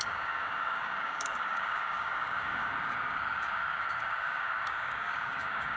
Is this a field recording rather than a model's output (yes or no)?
no